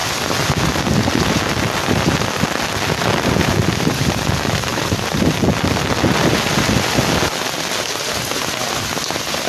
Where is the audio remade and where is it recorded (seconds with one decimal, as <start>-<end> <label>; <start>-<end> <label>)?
0.0-4.7 recorded; 4.7-5.2 remade; 5.2-9.5 recorded